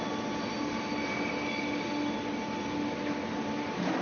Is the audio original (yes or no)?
yes